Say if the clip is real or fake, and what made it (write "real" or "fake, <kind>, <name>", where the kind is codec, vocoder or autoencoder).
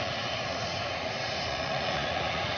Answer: fake, vocoder, Vocos